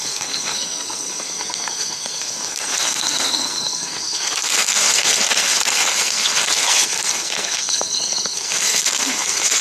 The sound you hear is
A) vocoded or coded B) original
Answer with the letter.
A